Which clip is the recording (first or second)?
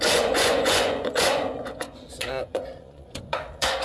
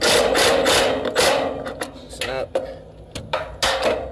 second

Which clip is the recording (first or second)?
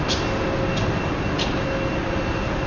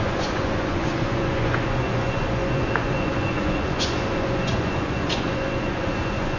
first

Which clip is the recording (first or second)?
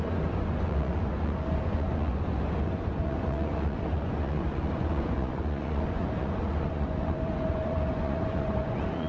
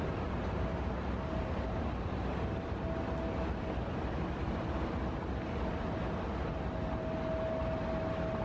second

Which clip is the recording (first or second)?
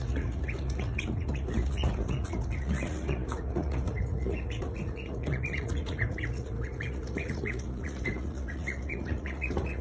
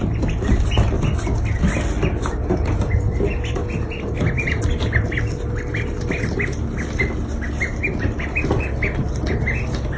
second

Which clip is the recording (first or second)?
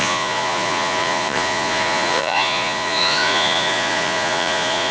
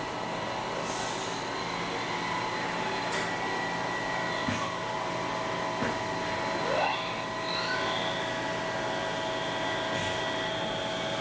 second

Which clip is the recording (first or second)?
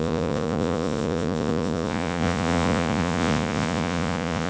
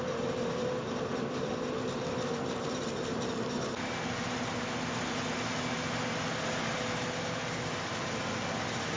second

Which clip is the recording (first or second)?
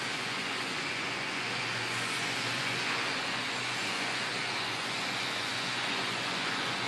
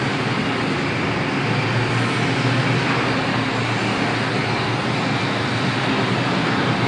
second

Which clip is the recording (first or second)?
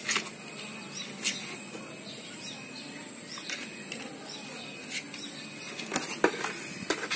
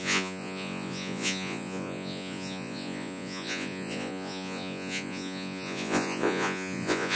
first